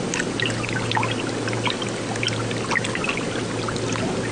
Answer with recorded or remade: recorded